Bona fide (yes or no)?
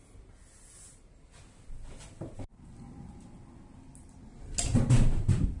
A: yes